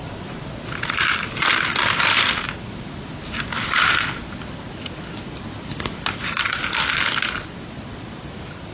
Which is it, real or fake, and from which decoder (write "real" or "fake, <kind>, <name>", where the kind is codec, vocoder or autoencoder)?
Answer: fake, vocoder, BigVGAN v2